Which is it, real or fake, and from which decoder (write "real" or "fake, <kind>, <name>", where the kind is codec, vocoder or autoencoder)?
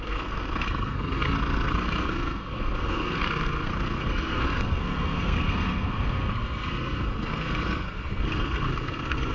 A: fake, codec, SNAC